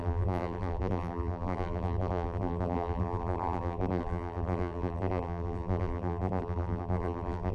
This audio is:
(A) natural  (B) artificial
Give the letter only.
B